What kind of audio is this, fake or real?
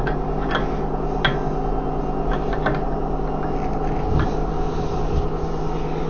real